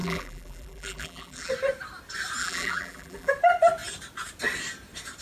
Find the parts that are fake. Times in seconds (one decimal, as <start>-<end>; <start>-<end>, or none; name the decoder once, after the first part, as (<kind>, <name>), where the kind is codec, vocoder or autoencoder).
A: 0.0-1.5 (vocoder, BigVGAN v2); 2.4-3.3